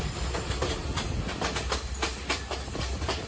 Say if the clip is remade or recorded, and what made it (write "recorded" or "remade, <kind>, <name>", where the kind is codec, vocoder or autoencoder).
recorded